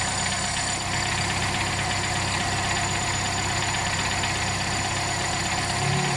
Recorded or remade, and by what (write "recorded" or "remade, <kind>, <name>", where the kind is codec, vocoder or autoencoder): recorded